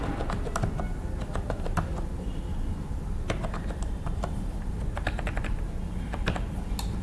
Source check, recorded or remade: recorded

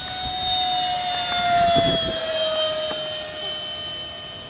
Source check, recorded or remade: recorded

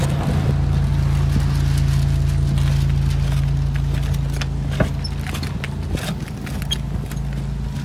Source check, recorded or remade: recorded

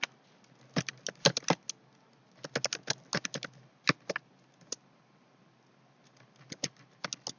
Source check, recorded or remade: recorded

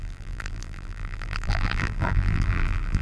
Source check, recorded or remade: remade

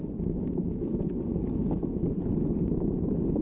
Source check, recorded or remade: recorded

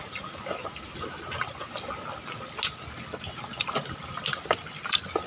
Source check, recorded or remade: recorded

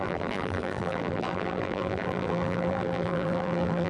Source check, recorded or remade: remade